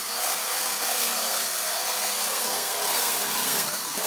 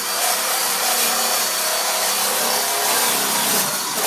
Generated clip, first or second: first